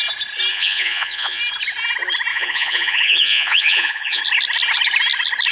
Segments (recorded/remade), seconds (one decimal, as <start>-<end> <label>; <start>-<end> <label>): 0.0-0.5 recorded; 0.5-1.4 remade; 1.4-2.3 recorded; 2.3-4.2 remade; 4.2-5.5 recorded